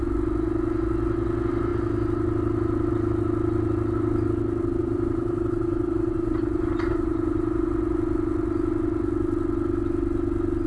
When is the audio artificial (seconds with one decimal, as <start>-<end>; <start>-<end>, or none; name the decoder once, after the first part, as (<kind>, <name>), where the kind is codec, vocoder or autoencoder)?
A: 4.8-7.7 (vocoder, BigVGAN v2)